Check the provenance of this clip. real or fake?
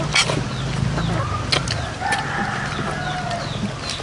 real